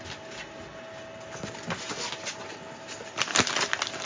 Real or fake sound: real